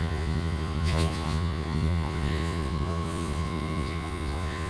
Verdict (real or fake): fake